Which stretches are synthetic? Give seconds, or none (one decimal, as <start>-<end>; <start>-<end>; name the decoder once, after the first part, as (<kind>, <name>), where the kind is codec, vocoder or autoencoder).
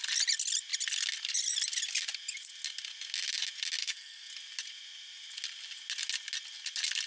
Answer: 3.8-4.3 (codec, SNAC)